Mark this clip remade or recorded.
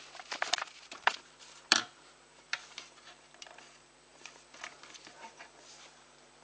remade